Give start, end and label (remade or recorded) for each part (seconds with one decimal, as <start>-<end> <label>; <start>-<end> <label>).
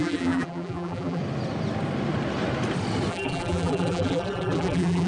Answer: 0.0-1.2 remade; 1.2-3.1 recorded; 3.1-5.1 remade